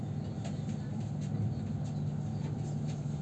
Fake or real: real